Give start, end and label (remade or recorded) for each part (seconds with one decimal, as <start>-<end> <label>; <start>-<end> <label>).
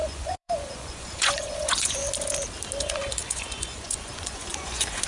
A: 0.0-2.0 remade; 2.0-2.8 recorded; 2.8-5.1 remade